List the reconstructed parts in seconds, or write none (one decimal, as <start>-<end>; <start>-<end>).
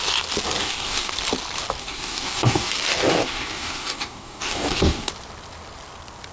0.6-1.1; 1.8-2.7; 3.2-5.1